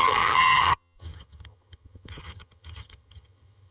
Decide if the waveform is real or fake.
fake